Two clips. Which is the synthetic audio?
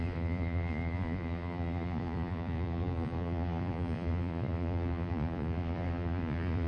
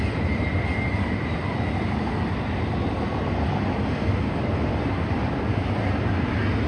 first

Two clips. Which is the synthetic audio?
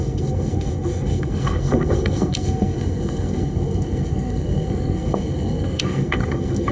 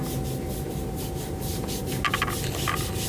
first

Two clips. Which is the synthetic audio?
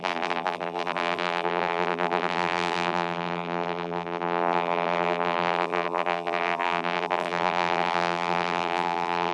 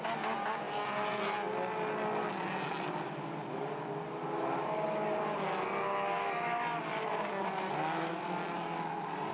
first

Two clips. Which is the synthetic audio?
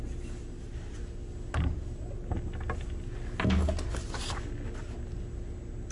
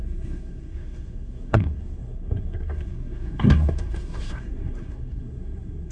second